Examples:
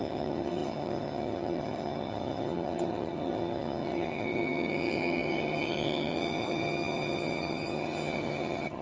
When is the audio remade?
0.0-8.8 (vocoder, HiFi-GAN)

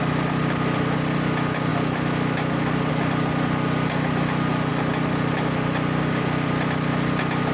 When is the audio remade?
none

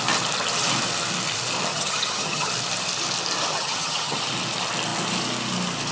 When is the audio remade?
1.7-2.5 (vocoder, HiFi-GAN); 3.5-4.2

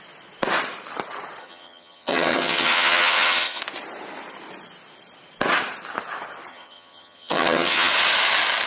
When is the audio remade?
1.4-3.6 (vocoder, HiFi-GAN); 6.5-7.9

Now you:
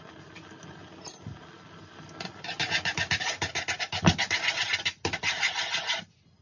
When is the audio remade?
none

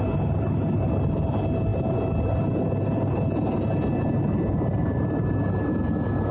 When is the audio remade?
none